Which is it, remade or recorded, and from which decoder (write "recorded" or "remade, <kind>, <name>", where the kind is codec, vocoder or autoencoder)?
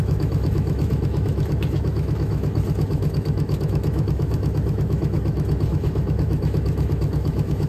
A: remade, autoencoder, DAC-VAE